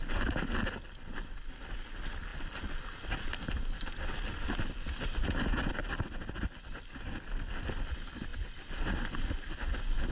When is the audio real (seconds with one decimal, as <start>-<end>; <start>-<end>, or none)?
0.0-10.1